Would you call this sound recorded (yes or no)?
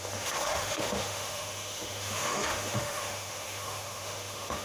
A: no